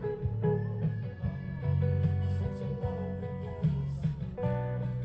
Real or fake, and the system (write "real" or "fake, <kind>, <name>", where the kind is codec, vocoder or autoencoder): real